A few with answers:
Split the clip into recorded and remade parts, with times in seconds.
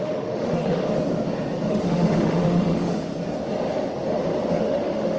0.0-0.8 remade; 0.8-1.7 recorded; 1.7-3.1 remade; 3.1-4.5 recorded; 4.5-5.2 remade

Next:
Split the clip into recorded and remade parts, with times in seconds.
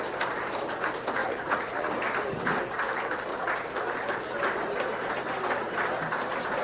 0.0-1.2 recorded; 1.2-1.9 remade; 1.9-3.3 recorded; 3.3-3.8 remade; 3.8-6.6 recorded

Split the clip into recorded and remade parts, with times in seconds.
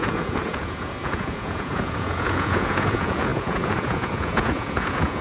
0.0-5.2 remade